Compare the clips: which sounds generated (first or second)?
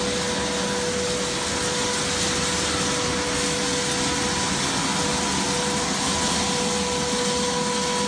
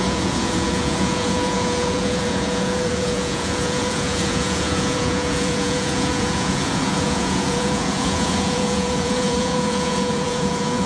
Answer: second